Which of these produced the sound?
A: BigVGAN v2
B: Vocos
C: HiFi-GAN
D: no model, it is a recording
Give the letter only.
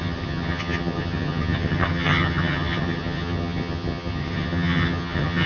C